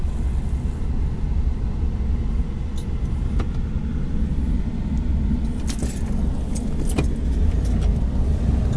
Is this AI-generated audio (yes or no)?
no